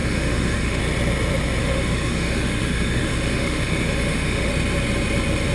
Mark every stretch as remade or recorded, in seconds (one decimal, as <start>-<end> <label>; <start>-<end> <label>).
0.0-0.8 remade; 0.8-1.6 recorded; 1.6-4.5 remade; 4.5-5.5 recorded